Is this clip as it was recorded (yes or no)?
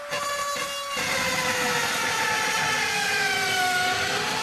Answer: yes